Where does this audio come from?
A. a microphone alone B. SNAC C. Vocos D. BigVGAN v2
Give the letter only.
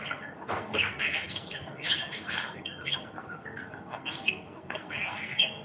B